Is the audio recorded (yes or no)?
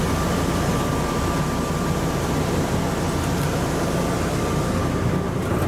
yes